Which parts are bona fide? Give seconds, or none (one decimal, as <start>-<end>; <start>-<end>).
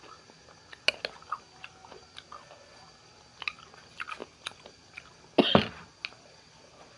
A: 0.0-7.0